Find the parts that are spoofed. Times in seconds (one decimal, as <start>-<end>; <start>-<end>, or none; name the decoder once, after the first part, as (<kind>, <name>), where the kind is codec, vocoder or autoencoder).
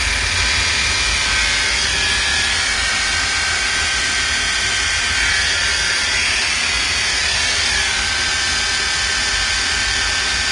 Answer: 2.3-4.0 (vocoder, BigVGAN v2); 7.1-8.3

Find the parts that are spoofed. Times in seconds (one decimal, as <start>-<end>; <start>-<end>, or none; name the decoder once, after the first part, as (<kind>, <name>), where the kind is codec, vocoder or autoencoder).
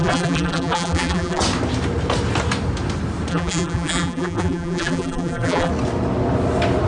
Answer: 0.0-1.4 (vocoder, BigVGAN v2); 3.3-5.7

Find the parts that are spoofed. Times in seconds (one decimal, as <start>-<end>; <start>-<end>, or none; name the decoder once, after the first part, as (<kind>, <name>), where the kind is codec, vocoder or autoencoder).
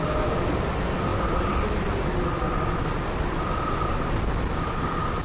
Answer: none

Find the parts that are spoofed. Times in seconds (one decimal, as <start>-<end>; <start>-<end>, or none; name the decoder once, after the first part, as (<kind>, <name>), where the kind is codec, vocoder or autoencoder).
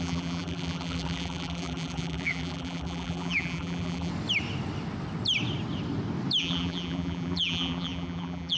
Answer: 0.0-4.1 (vocoder, BigVGAN v2); 6.4-8.6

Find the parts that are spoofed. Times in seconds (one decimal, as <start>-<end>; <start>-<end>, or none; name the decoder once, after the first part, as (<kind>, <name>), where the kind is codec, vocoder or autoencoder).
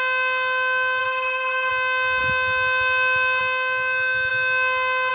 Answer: 1.0-1.7 (vocoder, BigVGAN v2)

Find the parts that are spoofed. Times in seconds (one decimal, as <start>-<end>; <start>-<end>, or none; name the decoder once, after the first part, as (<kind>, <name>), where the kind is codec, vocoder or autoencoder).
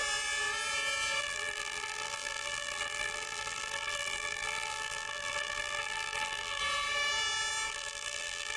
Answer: 1.2-6.6 (vocoder, BigVGAN v2); 7.7-8.6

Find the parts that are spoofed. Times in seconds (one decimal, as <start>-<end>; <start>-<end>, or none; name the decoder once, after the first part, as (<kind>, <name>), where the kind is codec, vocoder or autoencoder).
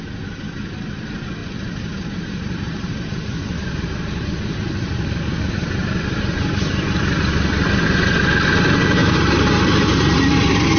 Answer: 1.4-5.5 (vocoder, BigVGAN v2); 9.0-10.8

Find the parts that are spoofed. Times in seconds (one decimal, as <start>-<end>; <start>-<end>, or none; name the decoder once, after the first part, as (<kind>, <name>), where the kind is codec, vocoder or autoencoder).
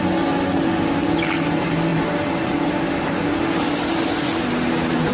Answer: none